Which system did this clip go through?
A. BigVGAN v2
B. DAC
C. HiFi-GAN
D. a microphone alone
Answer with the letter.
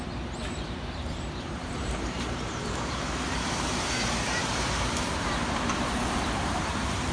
A